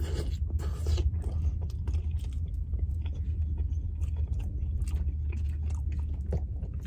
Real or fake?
real